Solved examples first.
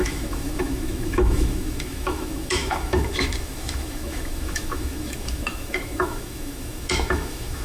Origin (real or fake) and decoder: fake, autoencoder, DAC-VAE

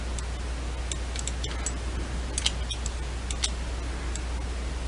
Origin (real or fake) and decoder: real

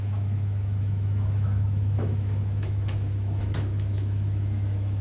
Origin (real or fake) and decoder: fake, autoencoder, DAC-VAE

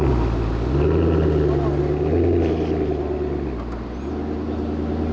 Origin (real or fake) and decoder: real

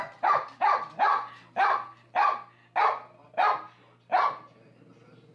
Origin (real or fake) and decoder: real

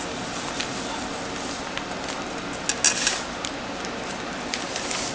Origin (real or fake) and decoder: real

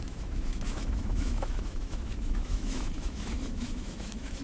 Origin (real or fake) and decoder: fake, autoencoder, DAC-VAE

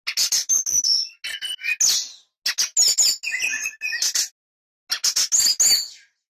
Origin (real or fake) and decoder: real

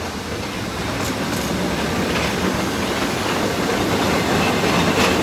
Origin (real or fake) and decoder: real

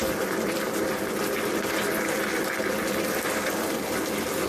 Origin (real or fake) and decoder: real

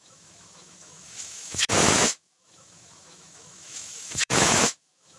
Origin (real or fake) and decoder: fake, autoencoder, DAC-VAE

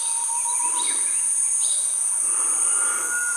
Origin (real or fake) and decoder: real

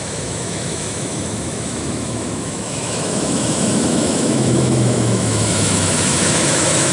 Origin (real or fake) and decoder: fake, autoencoder, DAC-VAE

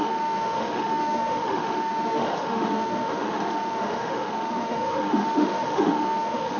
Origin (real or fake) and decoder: fake, autoencoder, DAC-VAE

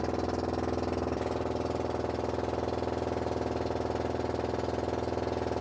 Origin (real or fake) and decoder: real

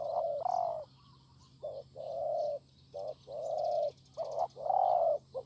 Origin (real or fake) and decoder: real